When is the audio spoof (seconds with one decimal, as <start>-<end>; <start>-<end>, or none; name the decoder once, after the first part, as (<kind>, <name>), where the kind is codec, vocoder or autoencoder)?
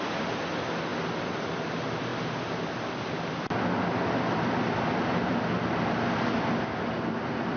none